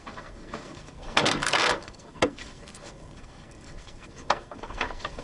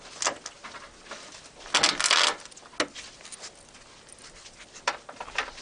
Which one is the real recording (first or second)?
second